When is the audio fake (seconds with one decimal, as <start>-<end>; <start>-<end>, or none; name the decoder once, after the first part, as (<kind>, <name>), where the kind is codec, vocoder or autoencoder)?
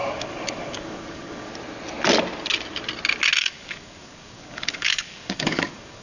0.0-1.5 (codec, DAC); 3.4-6.0